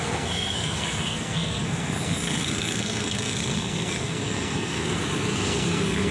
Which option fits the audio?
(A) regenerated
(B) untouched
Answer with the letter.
A